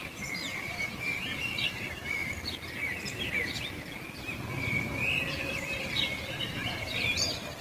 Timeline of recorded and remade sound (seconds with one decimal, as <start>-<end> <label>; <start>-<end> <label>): 0.0-2.2 remade; 2.2-5.3 recorded; 5.3-7.6 remade